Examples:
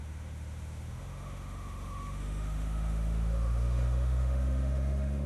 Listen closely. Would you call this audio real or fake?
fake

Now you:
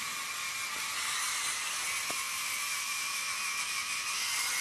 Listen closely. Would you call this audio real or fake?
real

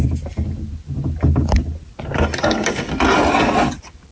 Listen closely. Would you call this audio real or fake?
real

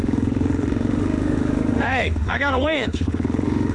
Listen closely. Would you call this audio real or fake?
fake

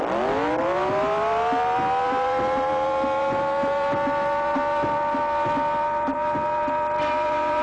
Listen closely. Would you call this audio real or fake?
real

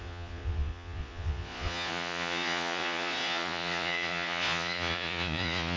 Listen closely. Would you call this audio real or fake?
fake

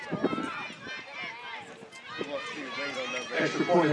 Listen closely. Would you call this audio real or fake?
real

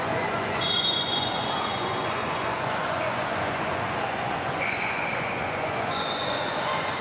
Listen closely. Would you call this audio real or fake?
fake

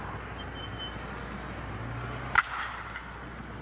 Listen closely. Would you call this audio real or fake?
real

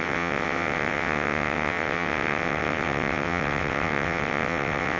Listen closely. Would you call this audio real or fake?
fake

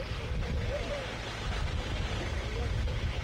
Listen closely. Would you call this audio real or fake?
real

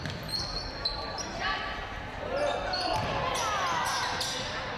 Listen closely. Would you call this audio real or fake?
real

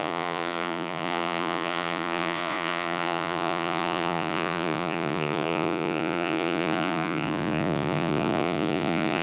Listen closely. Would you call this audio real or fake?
fake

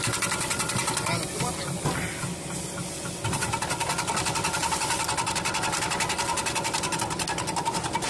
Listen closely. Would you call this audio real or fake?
real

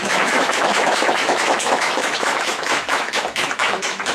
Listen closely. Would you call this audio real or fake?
fake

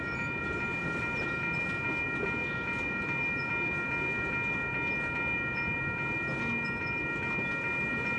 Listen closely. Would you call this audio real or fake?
real